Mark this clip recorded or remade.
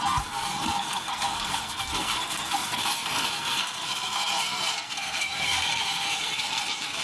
remade